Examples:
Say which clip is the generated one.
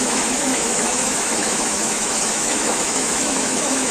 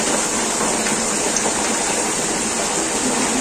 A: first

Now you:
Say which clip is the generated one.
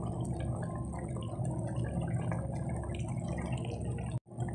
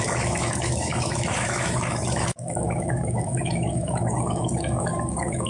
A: second